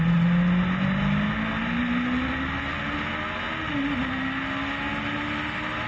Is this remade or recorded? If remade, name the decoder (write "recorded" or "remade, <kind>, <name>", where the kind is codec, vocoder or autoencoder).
recorded